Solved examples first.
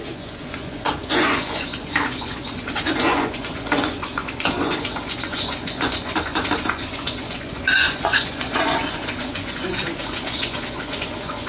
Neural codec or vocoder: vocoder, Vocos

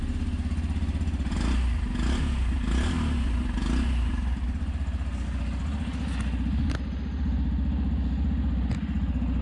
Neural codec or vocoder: none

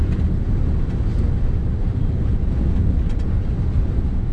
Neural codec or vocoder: none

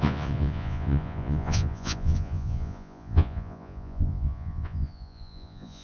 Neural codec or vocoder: vocoder, Vocos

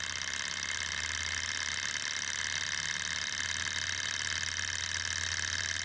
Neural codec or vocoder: none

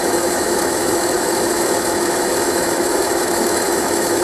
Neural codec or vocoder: autoencoder, DAC-VAE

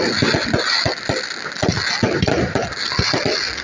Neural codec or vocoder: none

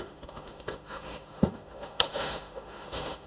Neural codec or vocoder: autoencoder, DAC-VAE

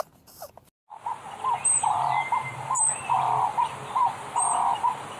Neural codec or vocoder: none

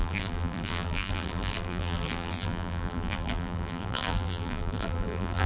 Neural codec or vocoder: vocoder, BigVGAN v2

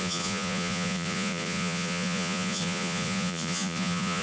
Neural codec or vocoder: vocoder, Vocos